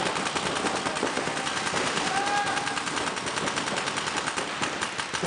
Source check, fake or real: real